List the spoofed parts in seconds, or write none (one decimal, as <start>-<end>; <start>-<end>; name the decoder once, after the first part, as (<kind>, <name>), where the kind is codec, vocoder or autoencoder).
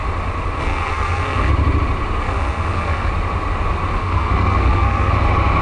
0.6-1.5 (codec, SNAC); 2.2-3.1; 4.0-5.1